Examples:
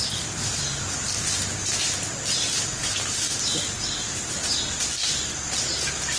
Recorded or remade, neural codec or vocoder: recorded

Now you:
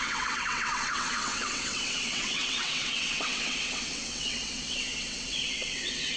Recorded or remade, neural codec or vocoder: remade, vocoder, WaveNeXt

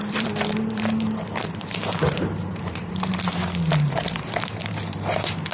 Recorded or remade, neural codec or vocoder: remade, vocoder, BigVGAN v2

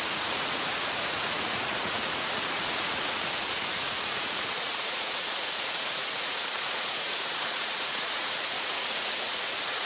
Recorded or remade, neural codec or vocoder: remade, vocoder, Vocos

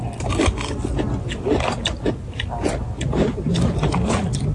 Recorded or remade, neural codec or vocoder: recorded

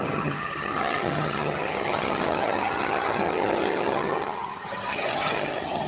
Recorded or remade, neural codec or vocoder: remade, vocoder, HiFi-GAN